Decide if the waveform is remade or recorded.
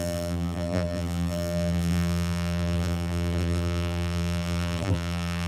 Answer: remade